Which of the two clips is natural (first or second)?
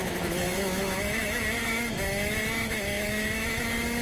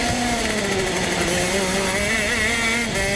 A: second